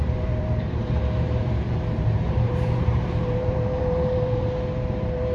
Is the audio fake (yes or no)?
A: yes